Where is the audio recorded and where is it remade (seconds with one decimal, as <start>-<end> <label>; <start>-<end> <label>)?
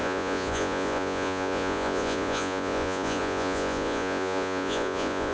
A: 0.0-5.3 remade